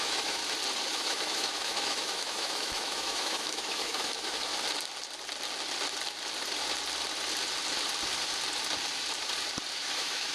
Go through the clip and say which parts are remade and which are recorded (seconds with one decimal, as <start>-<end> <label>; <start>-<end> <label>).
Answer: 0.0-0.4 remade; 0.4-0.9 recorded; 0.9-4.5 remade; 4.5-9.7 recorded; 9.7-10.3 remade